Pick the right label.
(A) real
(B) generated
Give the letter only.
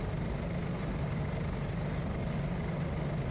A